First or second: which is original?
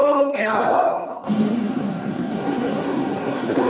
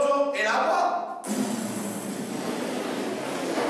second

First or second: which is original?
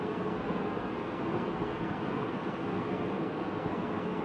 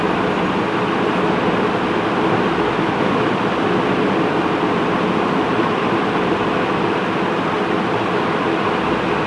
second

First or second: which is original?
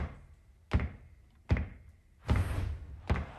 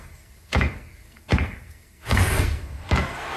first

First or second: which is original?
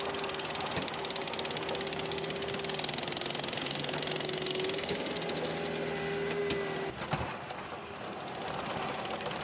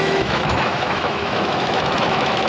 first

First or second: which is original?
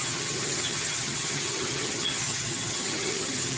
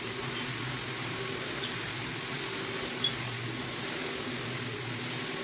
second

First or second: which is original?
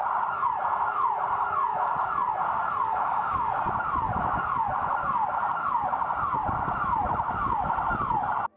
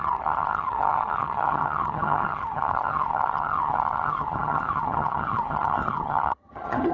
first